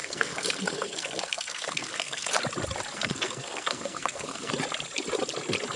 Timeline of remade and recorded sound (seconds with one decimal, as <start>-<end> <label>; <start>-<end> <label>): 0.0-2.3 remade; 2.3-2.9 recorded; 2.9-4.5 remade; 4.5-5.8 recorded